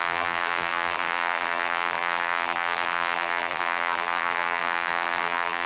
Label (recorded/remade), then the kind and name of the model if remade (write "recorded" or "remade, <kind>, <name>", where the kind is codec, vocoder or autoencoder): remade, vocoder, BigVGAN v2